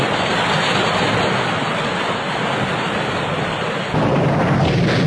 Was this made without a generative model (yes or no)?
yes